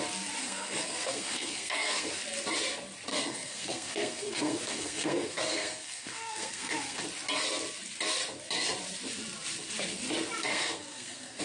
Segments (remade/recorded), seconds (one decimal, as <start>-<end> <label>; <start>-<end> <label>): 0.0-0.4 recorded; 0.4-2.2 remade; 2.2-3.1 recorded; 3.1-7.0 remade; 7.0-10.5 recorded; 10.5-11.4 remade